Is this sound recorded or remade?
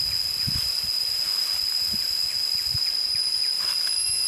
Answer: recorded